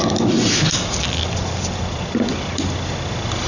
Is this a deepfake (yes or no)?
no